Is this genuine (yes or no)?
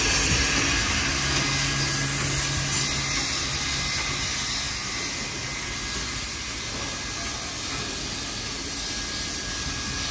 yes